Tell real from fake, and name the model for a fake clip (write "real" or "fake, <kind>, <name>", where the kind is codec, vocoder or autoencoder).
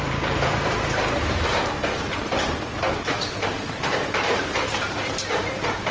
fake, vocoder, BigVGAN v2